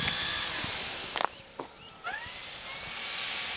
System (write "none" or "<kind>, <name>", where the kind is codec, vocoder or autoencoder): none